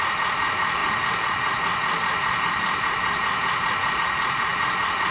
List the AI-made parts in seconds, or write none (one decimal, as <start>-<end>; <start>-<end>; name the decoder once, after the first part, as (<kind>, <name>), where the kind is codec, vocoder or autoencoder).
none